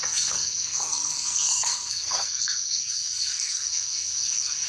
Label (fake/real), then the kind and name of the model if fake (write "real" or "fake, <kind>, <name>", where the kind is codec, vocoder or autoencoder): fake, codec, SNAC